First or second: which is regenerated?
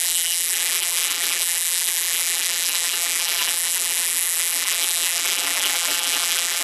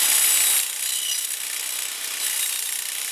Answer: first